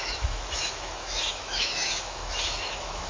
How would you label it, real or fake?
fake